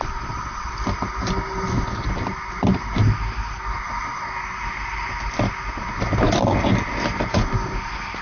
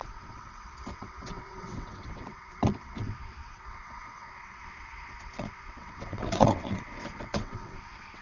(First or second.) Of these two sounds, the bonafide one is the first